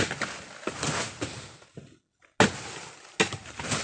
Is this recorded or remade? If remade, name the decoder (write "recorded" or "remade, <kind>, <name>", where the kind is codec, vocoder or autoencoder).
recorded